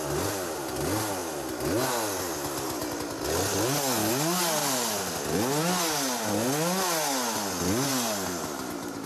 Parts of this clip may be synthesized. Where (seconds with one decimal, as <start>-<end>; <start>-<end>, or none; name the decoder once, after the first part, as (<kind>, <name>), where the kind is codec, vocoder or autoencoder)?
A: 4.6-5.2 (vocoder, BigVGAN v2); 7.9-8.4